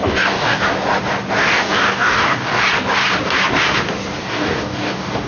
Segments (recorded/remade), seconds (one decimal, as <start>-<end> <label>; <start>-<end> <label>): 0.0-0.6 remade; 0.6-1.4 recorded; 1.4-2.7 remade; 2.7-4.2 recorded; 4.2-5.3 remade